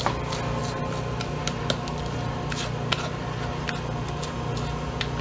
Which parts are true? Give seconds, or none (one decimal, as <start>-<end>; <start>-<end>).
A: 0.0-5.2

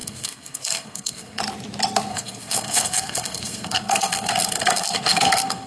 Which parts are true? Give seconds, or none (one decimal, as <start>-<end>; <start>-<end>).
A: 1.4-2.1

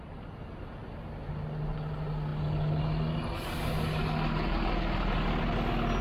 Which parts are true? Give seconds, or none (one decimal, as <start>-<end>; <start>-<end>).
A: 0.0-0.8; 1.3-6.0

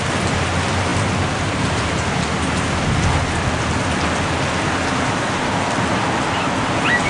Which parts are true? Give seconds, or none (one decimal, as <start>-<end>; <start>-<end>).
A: 0.0-7.1

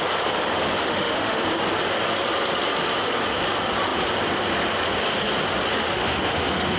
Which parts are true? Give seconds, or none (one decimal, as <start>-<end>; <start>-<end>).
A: 0.0-0.8; 1.4-5.7